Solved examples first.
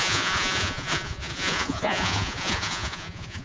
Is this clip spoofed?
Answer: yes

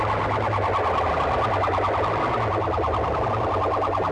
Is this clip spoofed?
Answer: no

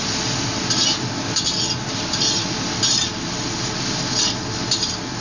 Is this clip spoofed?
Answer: no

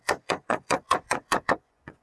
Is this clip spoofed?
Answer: yes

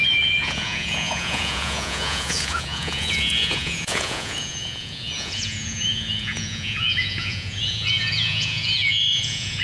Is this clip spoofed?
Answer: yes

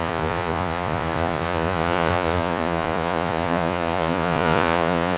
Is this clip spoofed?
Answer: yes